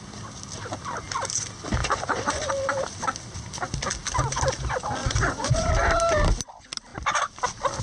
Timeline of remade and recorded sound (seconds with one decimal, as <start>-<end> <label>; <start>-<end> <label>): 0.0-1.8 recorded; 1.8-2.5 remade; 2.5-5.0 recorded; 5.0-5.7 remade; 5.7-7.8 recorded